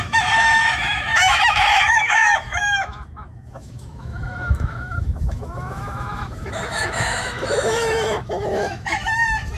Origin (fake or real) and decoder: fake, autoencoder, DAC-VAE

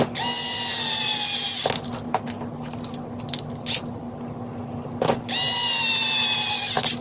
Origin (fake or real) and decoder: real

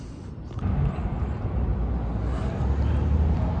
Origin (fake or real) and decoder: real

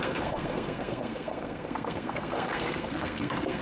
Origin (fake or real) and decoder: fake, codec, SNAC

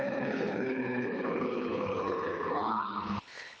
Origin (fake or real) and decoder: fake, codec, HILCodec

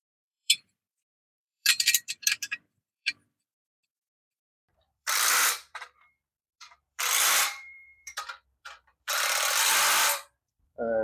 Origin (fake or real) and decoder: fake, vocoder, BigVGAN v2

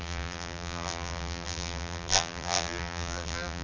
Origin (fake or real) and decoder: fake, vocoder, BigVGAN v2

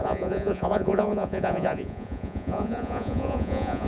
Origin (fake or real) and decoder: fake, vocoder, Vocos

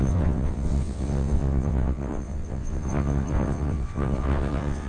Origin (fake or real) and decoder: fake, vocoder, WaveNeXt